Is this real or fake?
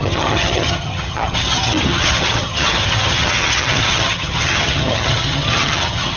fake